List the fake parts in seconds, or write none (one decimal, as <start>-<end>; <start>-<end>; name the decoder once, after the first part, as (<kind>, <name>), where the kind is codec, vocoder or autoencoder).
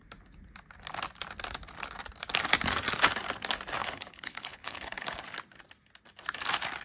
3.8-5.2 (codec, HILCodec)